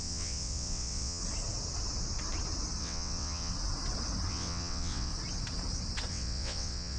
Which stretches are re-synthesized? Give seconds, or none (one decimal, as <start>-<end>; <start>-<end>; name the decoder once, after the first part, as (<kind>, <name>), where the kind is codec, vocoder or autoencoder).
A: 0.0-1.2 (vocoder, WaveNeXt); 2.8-3.5; 4.3-5.1; 6.1-7.0